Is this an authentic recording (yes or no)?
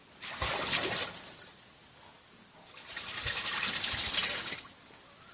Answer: yes